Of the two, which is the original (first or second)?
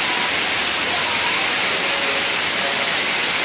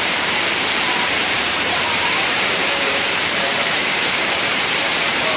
first